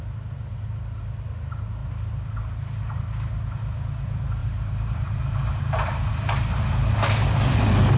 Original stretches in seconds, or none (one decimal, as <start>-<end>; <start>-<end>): 0.0-4.4; 6.1-8.0